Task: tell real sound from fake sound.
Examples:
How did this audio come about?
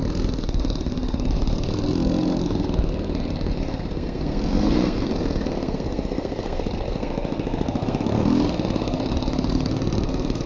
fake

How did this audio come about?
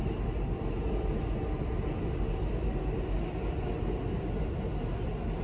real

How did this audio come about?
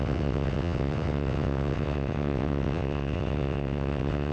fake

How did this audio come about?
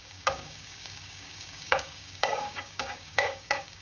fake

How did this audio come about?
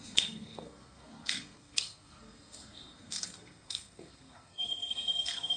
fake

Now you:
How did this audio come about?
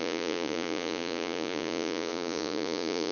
fake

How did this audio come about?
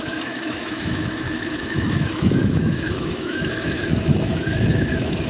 fake